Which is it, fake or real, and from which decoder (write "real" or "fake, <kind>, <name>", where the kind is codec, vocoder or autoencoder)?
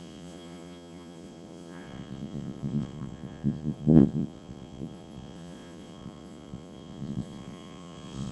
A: fake, vocoder, Vocos